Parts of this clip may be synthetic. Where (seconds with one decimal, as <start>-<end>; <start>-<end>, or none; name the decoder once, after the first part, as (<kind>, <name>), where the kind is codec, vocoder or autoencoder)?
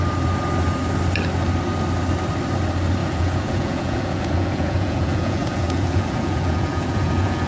3.0-7.5 (vocoder, Vocos)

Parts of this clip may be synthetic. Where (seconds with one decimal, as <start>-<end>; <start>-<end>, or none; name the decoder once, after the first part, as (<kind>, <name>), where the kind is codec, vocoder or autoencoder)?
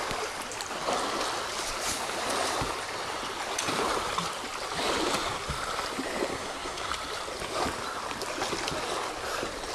6.3-6.9 (codec, SNAC)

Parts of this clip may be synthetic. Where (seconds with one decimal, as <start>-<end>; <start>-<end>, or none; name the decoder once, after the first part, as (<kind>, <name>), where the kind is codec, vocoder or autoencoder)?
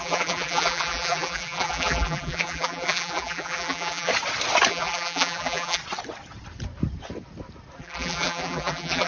0.0-4.1 (vocoder, BigVGAN v2); 4.7-5.8; 7.8-9.1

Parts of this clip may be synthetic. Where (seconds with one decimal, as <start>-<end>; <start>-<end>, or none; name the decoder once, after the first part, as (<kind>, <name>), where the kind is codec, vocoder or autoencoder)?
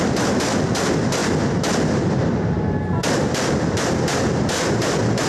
none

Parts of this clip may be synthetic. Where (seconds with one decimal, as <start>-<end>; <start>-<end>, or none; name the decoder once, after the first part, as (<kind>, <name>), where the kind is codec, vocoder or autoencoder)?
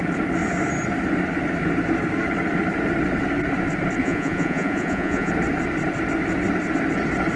4.0-5.3 (vocoder, Vocos)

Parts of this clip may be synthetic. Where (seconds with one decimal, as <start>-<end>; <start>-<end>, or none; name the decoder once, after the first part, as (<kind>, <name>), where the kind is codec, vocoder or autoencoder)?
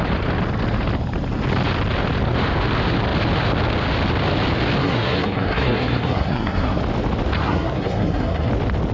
4.8-6.8 (codec, SNAC); 7.4-8.5